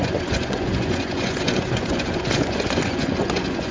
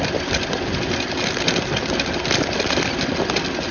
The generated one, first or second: first